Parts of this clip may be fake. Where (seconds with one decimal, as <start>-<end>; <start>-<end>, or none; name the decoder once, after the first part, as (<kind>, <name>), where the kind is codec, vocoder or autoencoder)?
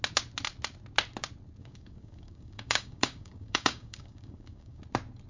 1.6-4.8 (codec, DAC)